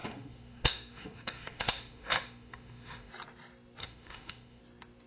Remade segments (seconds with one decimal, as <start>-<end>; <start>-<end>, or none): 0.0-3.1; 3.8-4.6